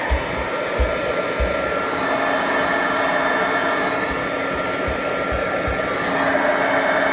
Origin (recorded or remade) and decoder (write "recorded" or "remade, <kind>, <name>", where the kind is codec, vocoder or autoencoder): recorded